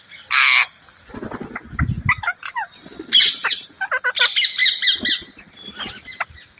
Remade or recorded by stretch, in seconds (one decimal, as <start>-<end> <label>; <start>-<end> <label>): 0.0-6.6 recorded